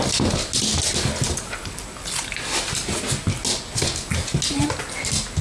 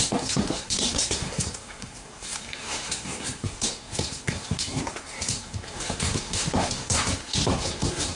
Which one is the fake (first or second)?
second